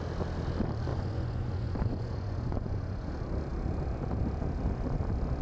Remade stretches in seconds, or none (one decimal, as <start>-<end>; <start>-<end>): 0.9-3.1